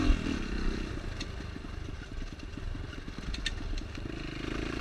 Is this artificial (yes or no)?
no